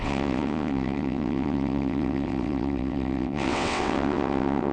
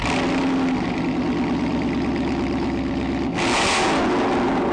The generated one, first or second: first